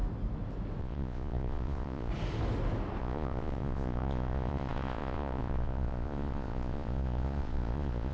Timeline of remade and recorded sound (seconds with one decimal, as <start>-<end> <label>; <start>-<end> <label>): 0.0-0.8 recorded; 0.8-2.1 remade; 2.1-3.0 recorded; 3.0-8.1 remade